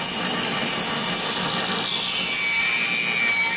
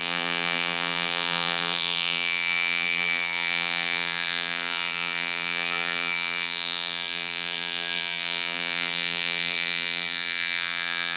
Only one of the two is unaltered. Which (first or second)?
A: first